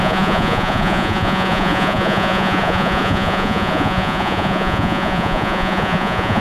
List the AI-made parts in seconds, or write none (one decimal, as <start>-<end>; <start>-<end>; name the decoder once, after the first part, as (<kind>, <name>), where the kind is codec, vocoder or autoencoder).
0.0-6.4 (vocoder, Vocos)